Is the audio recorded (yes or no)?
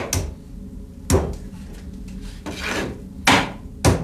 yes